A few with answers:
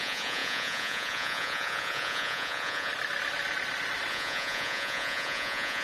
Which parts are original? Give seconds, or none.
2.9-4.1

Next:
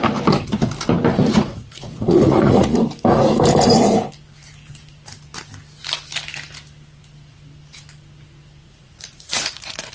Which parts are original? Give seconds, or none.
0.0-1.1; 2.8-8.6

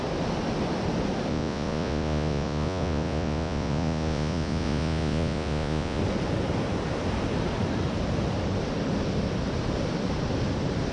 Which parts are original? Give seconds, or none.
0.0-1.3; 6.0-10.9

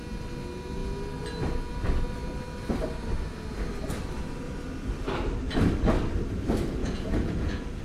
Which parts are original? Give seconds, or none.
0.0-6.8

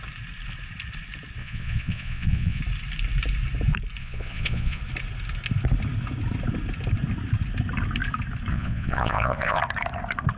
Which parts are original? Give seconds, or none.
0.0-1.4; 2.6-4.0; 4.8-8.5; 9.6-10.4

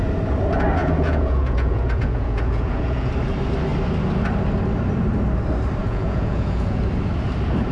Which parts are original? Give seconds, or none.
0.0-0.8; 3.1-5.8; 6.8-7.7

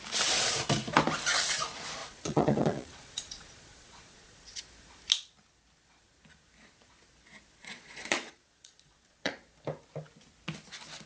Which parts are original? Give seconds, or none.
0.0-2.0; 4.6-7.6; 9.3-11.1